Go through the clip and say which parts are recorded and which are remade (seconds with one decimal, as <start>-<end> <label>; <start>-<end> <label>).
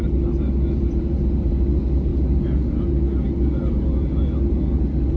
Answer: 0.0-5.2 recorded